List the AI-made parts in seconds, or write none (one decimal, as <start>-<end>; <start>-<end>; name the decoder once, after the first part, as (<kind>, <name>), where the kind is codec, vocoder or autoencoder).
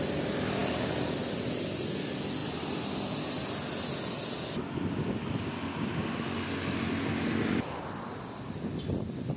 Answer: none